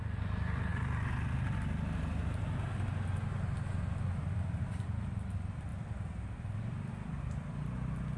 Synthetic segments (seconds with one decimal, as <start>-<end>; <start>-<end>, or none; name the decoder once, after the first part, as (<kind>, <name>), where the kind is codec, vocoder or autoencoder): none